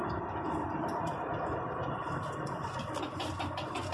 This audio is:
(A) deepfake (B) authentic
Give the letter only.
B